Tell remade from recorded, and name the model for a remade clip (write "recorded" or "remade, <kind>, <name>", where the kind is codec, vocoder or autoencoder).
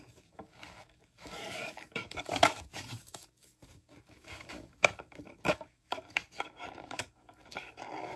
remade, codec, DAC